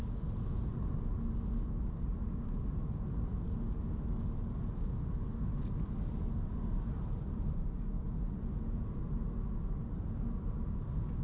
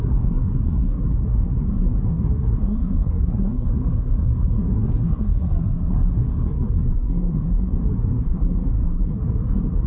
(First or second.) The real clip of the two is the first